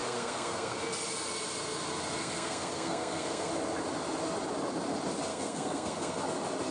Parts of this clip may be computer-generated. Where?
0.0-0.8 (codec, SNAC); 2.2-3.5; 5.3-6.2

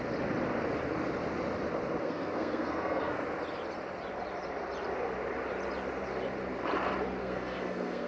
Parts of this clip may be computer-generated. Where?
2.0-3.2 (codec, SNAC); 7.2-8.1

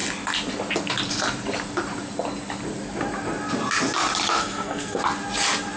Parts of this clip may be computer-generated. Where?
4.4-5.0 (codec, SNAC)

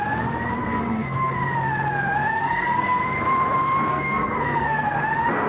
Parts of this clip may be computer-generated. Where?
0.6-1.4 (codec, SNAC); 2.3-3.0; 3.9-5.0

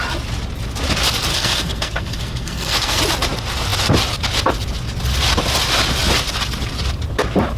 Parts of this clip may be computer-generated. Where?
1.3-3.0 (codec, SNAC)

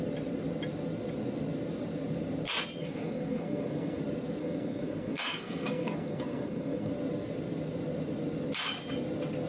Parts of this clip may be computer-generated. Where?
2.8-4.0 (codec, SNAC); 4.4-6.9